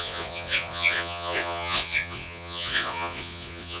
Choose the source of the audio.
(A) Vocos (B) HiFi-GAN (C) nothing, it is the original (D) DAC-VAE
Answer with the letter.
A